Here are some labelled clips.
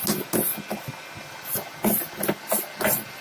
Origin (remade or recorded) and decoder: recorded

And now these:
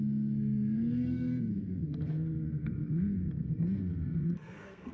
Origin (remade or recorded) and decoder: remade, codec, SNAC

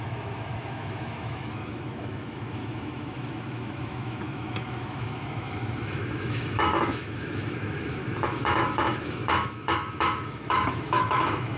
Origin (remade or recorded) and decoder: remade, autoencoder, DAC-VAE